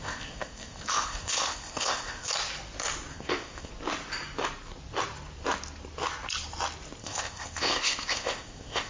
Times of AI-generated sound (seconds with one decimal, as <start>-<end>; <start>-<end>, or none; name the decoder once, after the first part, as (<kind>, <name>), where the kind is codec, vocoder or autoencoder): 0.0-2.3 (codec, ZipCodec); 3.1-3.7; 7.0-8.9